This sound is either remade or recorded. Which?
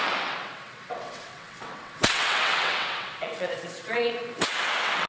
remade